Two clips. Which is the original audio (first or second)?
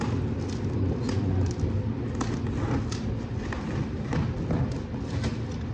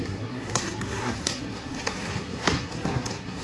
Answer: first